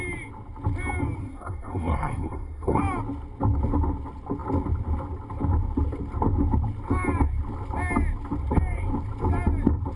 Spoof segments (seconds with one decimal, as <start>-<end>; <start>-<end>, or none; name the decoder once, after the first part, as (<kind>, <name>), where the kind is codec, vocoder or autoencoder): 1.2-2.8 (codec, SNAC)